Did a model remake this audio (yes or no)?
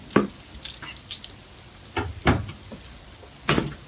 no